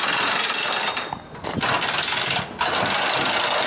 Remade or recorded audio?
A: recorded